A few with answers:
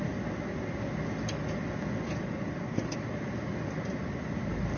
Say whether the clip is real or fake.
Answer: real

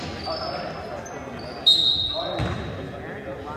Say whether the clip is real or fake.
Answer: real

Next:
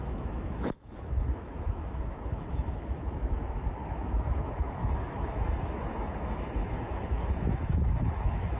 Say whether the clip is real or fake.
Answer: fake